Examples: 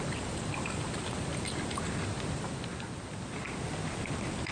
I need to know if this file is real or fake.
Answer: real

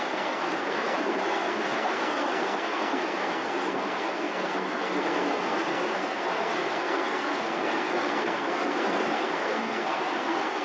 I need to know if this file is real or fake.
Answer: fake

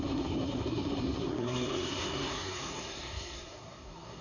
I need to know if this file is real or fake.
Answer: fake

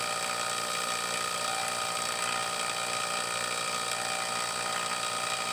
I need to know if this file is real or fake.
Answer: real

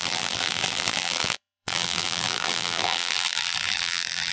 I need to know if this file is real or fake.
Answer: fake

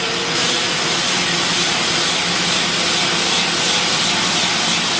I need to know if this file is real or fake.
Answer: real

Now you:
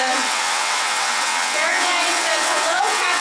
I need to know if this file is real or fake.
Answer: fake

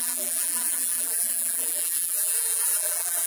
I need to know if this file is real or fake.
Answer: fake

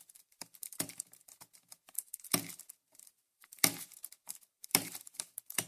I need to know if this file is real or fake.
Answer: fake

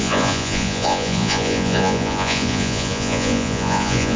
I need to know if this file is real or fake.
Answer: fake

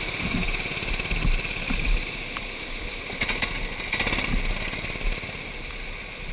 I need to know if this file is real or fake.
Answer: real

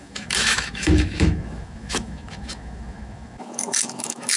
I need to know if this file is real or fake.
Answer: fake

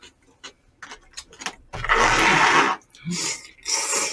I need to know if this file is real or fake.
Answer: real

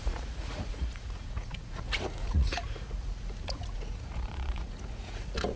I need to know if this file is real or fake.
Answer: fake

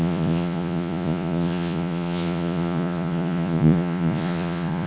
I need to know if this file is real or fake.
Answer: fake